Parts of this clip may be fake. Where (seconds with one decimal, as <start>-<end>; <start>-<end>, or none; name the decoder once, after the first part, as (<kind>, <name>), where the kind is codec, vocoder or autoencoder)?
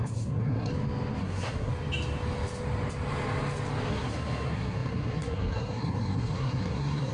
0.0-0.7 (codec, SNAC); 1.2-1.7; 3.9-7.1